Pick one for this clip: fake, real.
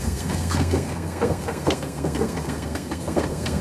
fake